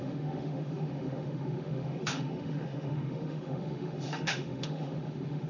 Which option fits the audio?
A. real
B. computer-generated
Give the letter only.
B